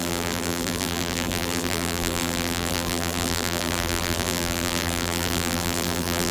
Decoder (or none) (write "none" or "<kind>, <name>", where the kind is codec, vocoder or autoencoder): vocoder, BigVGAN v2